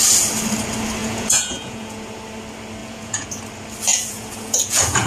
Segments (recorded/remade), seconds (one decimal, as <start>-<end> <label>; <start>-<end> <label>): 0.0-1.0 recorded; 1.0-2.2 remade; 2.2-2.8 recorded; 2.8-3.3 remade; 3.3-3.9 recorded; 3.9-5.1 remade